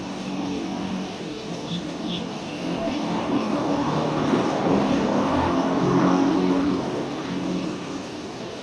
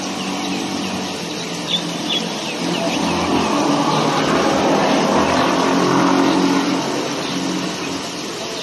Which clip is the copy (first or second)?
first